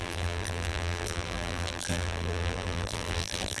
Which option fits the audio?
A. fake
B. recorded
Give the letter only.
A